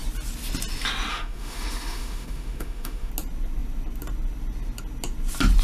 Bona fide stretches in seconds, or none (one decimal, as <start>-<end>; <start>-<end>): 0.0-1.1; 3.1-5.6